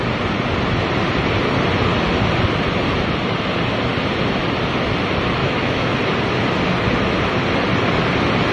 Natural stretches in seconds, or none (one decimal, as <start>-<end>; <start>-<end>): 0.0-5.4; 5.9-8.5